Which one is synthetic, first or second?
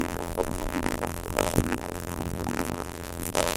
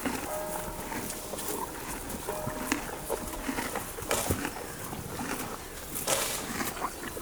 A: first